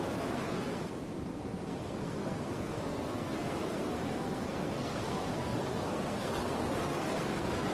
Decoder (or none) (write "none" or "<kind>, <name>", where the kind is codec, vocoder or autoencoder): codec, SNAC